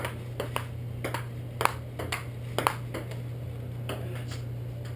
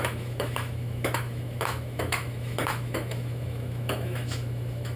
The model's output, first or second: second